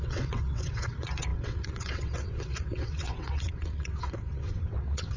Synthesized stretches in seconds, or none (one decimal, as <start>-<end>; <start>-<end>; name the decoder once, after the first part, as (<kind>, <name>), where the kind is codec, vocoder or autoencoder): 0.0-5.2 (vocoder, WaveNeXt)